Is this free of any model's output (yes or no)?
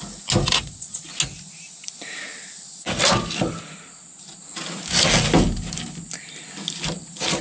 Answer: yes